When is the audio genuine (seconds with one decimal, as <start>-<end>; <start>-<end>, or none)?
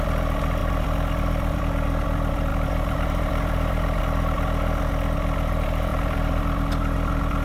0.0-0.6; 1.6-2.5; 4.0-5.9; 6.4-7.4